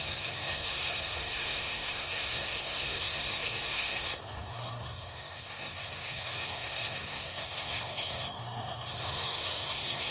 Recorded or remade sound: remade